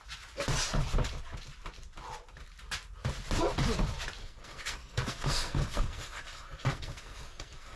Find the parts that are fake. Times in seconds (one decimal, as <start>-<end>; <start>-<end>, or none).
4.2-7.8